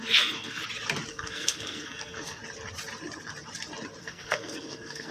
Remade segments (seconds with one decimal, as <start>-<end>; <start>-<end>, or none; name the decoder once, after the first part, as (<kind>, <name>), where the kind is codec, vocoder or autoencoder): 0.0-0.6 (codec, SNAC); 1.1-2.4; 4.0-5.1